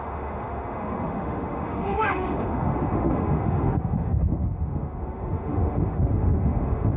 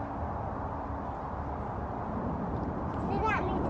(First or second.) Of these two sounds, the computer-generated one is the first